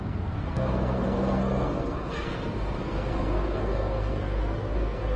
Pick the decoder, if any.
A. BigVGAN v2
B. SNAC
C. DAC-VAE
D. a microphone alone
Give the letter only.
B